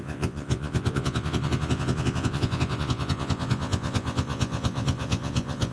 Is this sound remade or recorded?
remade